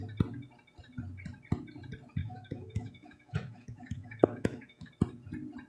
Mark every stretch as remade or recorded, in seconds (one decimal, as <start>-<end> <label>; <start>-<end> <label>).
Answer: 0.0-2.2 recorded; 2.2-4.9 remade; 4.9-5.7 recorded